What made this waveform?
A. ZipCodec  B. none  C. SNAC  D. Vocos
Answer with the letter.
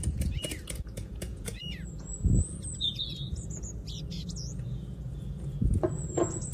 D